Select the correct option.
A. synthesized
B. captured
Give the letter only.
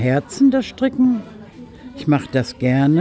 B